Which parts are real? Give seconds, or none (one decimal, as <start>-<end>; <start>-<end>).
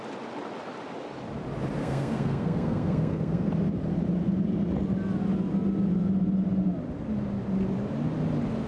0.0-1.8; 3.5-8.7